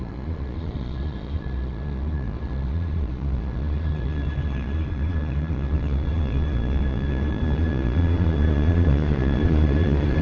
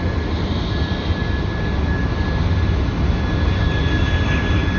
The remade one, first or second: first